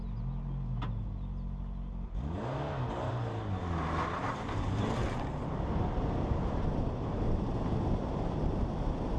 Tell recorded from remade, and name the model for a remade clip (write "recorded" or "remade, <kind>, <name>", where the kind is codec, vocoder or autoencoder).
recorded